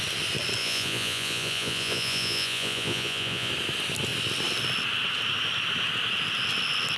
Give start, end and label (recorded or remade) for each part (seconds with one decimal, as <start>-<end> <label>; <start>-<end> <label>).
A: 0.0-0.6 recorded; 0.6-3.5 remade; 3.5-7.0 recorded